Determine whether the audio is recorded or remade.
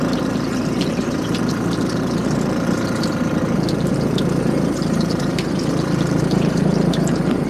remade